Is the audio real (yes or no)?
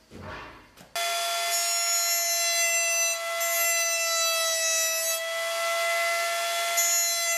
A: yes